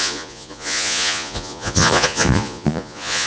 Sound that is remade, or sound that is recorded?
remade